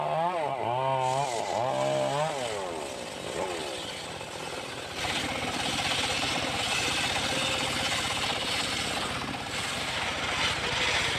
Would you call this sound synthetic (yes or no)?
no